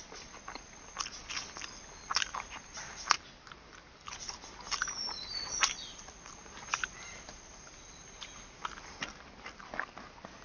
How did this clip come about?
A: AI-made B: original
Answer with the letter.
A